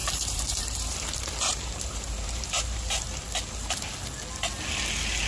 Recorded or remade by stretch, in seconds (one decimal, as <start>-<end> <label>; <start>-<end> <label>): 0.0-3.2 remade; 3.2-5.3 recorded